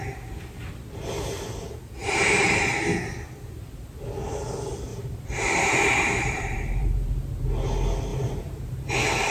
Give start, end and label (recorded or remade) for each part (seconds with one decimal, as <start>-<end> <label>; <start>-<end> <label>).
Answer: 0.0-2.0 recorded; 2.0-2.7 remade; 2.7-4.9 recorded; 4.9-7.1 remade; 7.1-8.1 recorded; 8.1-8.9 remade; 8.9-9.3 recorded